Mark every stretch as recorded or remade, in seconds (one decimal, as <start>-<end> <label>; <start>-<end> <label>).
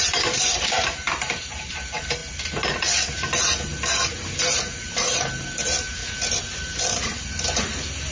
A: 0.0-2.2 remade; 2.2-4.4 recorded; 4.4-6.0 remade; 6.0-6.8 recorded; 6.8-8.1 remade